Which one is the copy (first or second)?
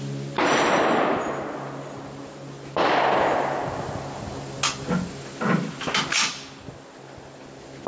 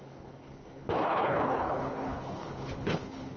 second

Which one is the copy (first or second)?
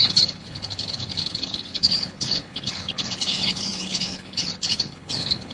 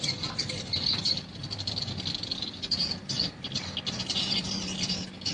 first